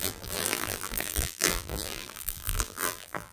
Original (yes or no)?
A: no